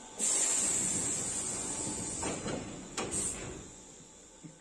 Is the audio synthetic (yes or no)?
yes